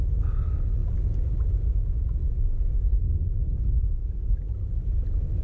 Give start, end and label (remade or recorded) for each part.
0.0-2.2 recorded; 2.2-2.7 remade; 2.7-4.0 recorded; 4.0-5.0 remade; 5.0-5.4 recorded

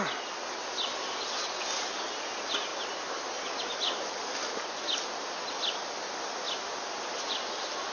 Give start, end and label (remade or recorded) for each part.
0.0-7.9 recorded

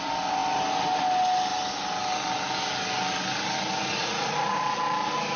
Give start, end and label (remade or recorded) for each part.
0.0-3.9 recorded; 3.9-4.6 remade; 4.6-5.4 recorded

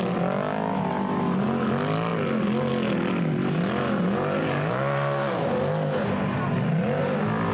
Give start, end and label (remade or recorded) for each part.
0.0-7.5 recorded

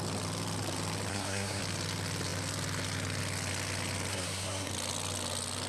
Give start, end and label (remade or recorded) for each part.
0.0-1.1 recorded; 1.1-1.6 remade; 1.6-4.1 recorded; 4.1-4.7 remade; 4.7-5.7 recorded